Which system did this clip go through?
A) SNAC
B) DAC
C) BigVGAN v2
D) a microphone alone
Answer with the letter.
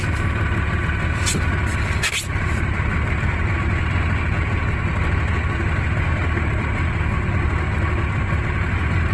D